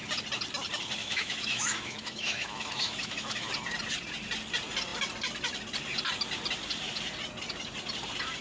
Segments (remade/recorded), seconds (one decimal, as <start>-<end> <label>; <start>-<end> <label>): 0.0-1.0 recorded; 1.0-3.5 remade; 3.5-8.4 recorded